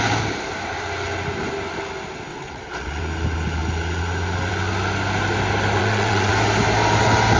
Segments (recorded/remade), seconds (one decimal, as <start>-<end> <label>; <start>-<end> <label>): 0.0-2.3 recorded; 2.3-3.0 remade; 3.0-5.8 recorded; 5.8-6.3 remade; 6.3-7.4 recorded